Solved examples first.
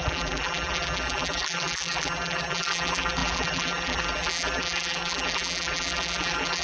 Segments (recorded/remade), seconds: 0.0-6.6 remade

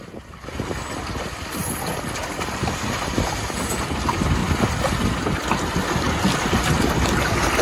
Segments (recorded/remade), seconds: 0.0-1.6 remade; 1.6-2.9 recorded; 2.9-4.4 remade; 4.4-6.2 recorded; 6.2-7.6 remade

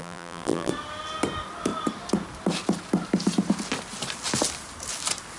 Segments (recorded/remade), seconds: 0.0-0.7 remade; 0.7-5.4 recorded